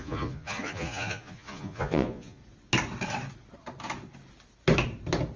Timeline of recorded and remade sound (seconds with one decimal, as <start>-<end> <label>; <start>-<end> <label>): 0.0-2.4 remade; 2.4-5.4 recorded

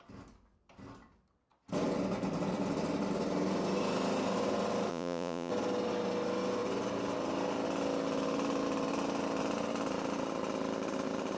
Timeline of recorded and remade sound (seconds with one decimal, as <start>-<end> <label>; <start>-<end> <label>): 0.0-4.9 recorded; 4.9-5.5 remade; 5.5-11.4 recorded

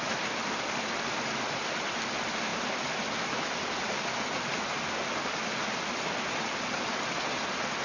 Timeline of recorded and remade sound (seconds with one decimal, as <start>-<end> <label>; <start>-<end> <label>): 0.0-7.8 recorded

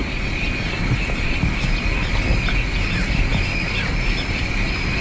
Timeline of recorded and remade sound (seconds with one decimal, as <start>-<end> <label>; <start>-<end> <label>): 0.0-5.0 recorded

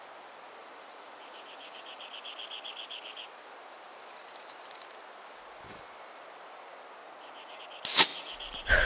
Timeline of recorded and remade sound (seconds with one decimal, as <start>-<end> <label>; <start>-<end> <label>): 0.0-0.6 recorded; 0.6-2.1 remade; 2.1-7.0 recorded; 7.0-7.6 remade; 7.6-8.1 recorded; 8.1-8.9 remade